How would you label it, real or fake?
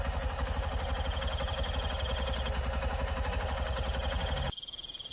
real